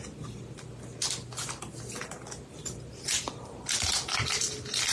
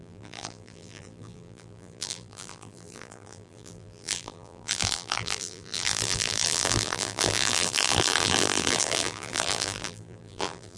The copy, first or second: second